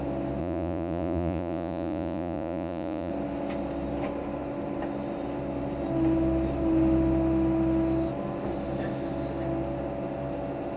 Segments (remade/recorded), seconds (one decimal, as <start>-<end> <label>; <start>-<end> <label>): 0.0-0.4 recorded; 0.4-3.1 remade; 3.1-10.8 recorded